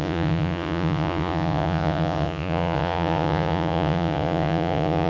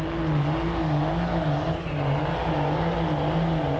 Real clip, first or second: second